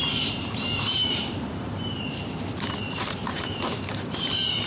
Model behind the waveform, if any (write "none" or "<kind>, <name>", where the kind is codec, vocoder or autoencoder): vocoder, BigVGAN v2